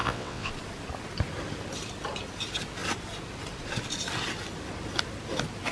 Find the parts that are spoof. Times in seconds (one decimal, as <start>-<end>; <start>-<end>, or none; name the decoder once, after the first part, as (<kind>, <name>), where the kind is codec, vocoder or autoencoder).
0.0-0.5 (vocoder, WaveNeXt)